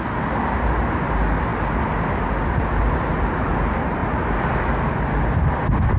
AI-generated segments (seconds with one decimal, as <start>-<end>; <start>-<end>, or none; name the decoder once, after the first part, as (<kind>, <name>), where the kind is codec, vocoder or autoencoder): none